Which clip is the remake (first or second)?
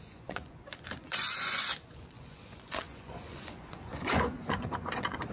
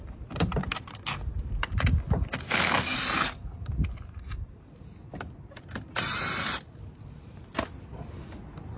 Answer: first